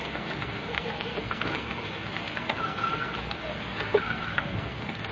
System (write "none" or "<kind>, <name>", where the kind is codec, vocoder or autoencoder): codec, SNAC